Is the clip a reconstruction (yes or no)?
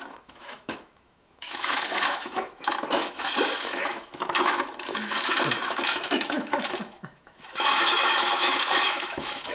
yes